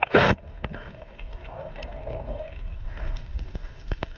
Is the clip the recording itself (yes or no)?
no